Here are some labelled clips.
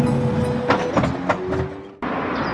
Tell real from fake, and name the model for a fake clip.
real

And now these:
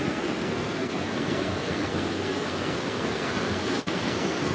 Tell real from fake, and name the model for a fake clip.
fake, codec, SNAC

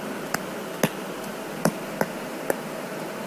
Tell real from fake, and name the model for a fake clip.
real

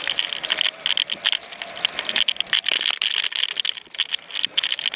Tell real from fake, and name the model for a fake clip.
real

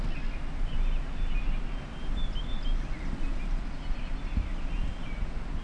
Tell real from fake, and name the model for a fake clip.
real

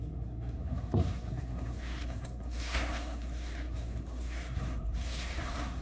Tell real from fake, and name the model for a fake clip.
fake, codec, SNAC